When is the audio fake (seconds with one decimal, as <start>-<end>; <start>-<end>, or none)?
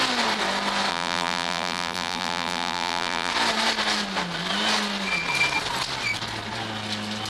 0.9-3.3